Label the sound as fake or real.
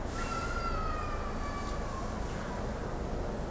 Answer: real